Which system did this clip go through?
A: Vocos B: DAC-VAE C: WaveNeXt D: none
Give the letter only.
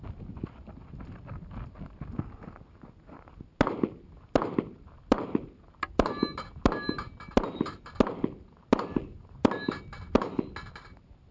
D